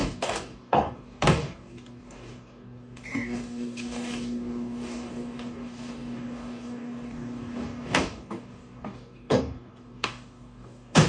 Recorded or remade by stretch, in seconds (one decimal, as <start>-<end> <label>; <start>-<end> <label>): 0.0-11.1 remade